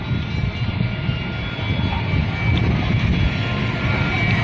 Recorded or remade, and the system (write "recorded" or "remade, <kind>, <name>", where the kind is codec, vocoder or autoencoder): recorded